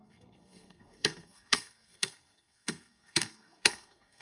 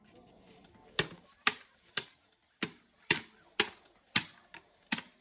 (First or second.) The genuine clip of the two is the second